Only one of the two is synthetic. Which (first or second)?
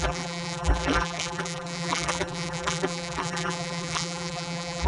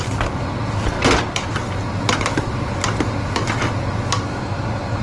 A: first